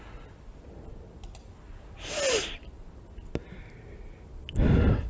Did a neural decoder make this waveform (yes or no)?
no